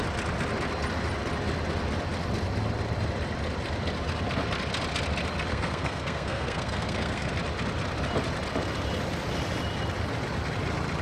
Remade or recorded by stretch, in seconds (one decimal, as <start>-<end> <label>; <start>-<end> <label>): 0.0-5.5 recorded; 5.5-7.3 remade; 7.3-11.0 recorded